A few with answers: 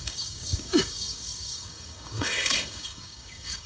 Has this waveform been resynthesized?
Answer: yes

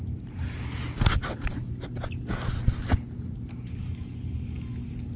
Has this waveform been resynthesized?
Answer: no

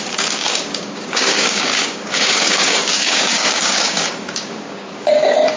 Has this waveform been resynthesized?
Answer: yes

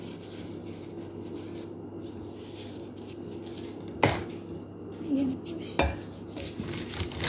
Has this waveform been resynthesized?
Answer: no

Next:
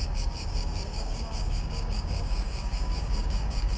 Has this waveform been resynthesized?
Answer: yes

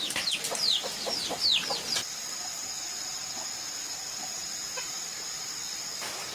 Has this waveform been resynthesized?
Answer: no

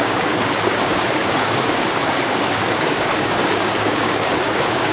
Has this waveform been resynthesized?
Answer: yes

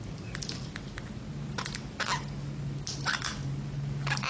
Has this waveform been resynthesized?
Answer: no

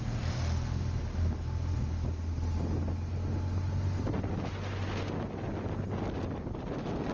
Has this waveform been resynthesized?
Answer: no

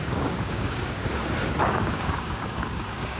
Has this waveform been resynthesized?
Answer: yes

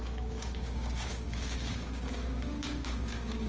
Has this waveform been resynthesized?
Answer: yes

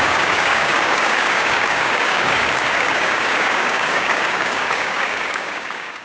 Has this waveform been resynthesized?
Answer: yes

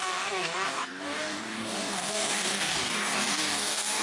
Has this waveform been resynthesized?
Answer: yes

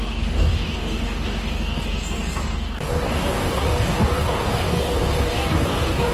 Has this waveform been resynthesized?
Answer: yes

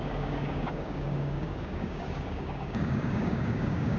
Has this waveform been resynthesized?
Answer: yes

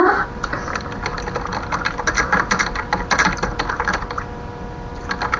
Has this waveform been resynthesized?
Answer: no